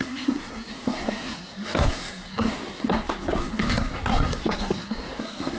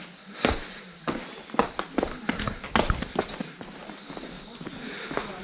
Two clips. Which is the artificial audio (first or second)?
first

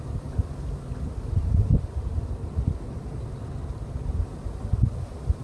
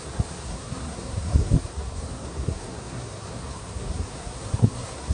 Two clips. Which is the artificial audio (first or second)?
second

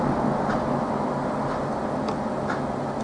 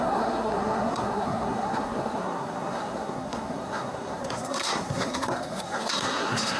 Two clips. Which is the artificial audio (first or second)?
second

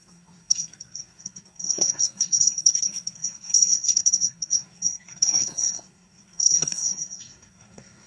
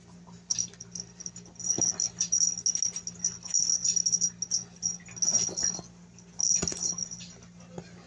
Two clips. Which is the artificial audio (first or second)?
first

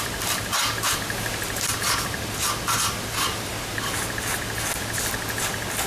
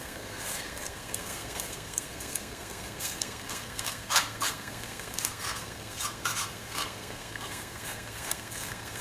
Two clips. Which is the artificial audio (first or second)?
second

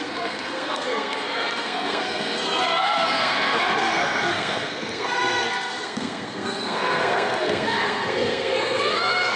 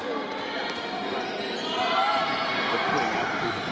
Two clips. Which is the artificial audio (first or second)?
first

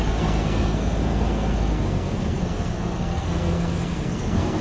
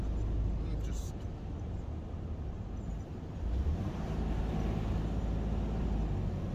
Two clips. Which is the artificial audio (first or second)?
first